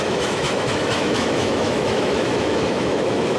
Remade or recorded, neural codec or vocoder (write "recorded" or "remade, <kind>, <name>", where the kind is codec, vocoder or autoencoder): remade, autoencoder, DAC-VAE